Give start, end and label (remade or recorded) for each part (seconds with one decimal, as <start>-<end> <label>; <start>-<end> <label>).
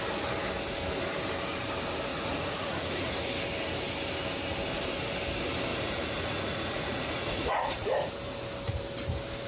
0.0-2.1 recorded; 2.1-3.3 remade; 3.3-5.7 recorded; 5.7-8.1 remade; 8.1-9.5 recorded